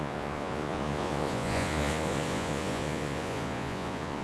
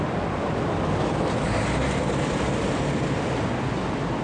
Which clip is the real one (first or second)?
second